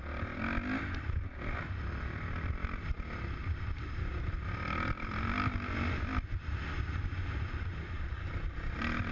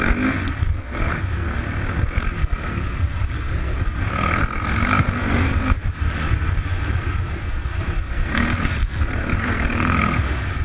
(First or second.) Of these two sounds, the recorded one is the first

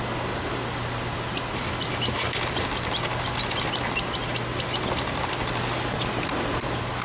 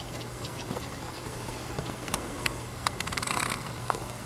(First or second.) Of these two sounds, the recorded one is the first